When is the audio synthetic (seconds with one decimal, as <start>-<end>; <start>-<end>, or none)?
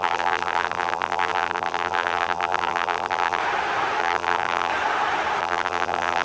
0.0-3.4; 4.0-4.7; 5.4-6.2